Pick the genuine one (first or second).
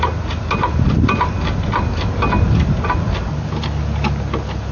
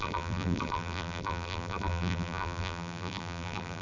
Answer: first